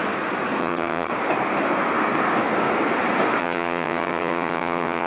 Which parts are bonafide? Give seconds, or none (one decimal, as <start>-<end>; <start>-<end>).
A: 0.0-0.6; 1.1-3.4